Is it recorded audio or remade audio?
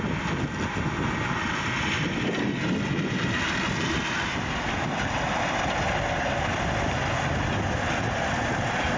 recorded